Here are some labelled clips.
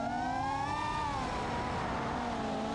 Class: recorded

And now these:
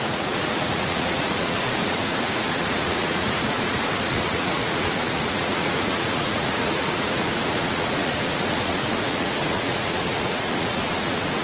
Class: remade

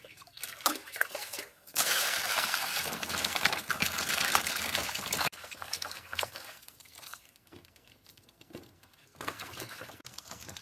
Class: remade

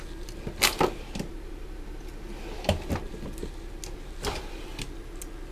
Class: recorded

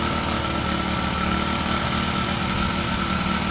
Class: recorded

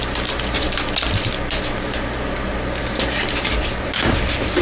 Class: recorded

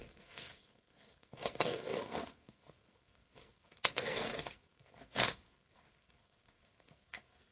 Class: remade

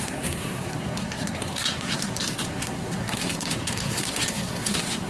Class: remade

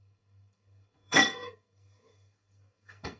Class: remade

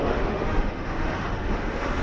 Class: remade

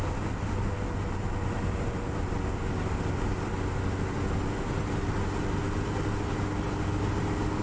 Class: recorded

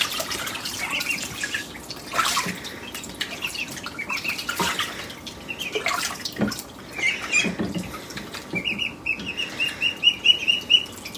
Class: recorded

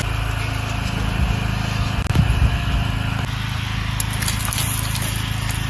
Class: recorded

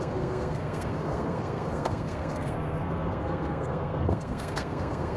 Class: remade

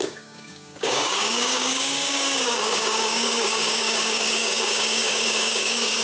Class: remade